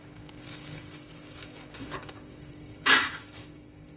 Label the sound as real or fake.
fake